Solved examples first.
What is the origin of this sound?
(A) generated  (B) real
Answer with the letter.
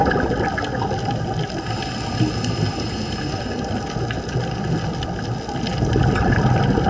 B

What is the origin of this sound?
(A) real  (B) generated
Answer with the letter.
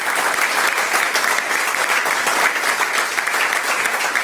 A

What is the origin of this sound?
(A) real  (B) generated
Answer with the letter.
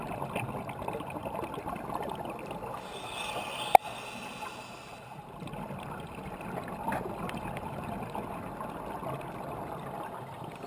A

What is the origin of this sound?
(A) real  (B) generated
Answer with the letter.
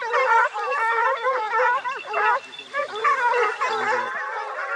A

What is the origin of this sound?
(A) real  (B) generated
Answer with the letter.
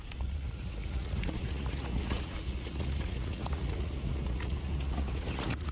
B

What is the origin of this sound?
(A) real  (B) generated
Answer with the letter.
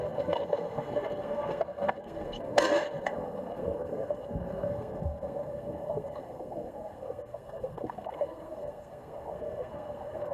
B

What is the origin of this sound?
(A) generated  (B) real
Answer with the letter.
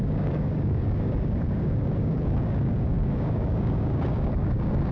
A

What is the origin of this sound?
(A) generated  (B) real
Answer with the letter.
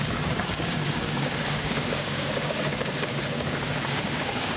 A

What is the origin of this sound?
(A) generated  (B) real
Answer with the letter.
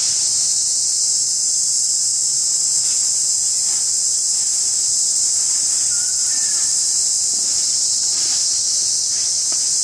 B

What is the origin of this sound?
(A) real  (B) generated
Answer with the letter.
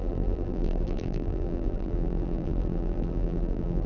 B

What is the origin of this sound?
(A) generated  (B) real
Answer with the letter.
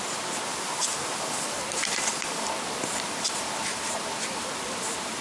B